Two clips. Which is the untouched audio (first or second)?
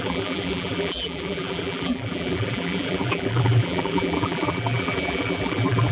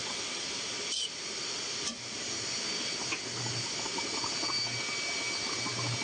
second